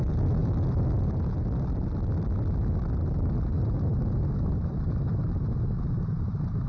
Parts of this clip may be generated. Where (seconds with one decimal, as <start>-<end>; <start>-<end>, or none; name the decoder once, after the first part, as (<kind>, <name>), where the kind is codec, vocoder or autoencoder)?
0.4-2.7 (vocoder, BigVGAN v2); 3.5-5.0